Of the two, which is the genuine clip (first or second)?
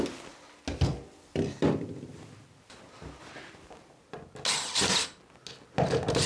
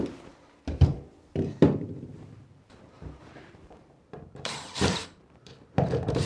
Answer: first